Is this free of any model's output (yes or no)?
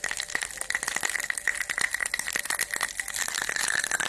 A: yes